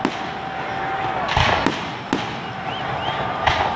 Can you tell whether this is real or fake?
real